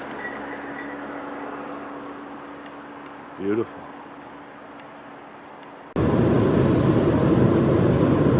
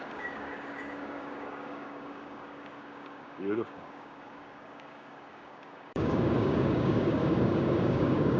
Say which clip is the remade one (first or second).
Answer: second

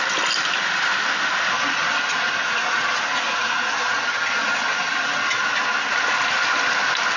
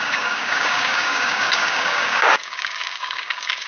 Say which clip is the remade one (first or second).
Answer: second